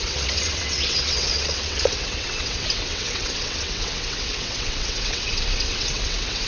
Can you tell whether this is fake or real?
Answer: fake